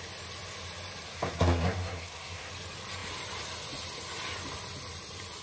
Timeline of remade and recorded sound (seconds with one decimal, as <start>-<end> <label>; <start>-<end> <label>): 0.0-1.1 recorded; 1.1-2.5 remade; 2.5-5.4 recorded